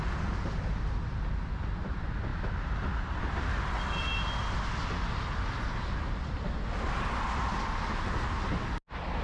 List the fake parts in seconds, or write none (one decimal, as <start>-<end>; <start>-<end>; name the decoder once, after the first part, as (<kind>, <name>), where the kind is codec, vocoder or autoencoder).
none